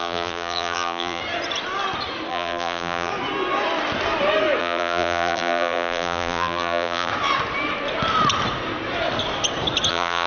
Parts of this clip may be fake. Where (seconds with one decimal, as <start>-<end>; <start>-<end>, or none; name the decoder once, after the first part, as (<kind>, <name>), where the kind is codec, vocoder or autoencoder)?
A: 0.0-1.2 (vocoder, BigVGAN v2); 2.3-3.1; 4.6-7.1; 9.9-10.3